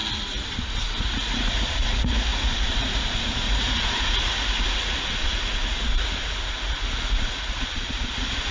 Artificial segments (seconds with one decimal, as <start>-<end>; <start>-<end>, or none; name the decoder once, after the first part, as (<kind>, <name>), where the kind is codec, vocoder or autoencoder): 1.0-8.5 (vocoder, Vocos)